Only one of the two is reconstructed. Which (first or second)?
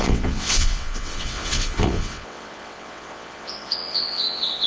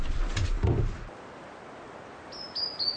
first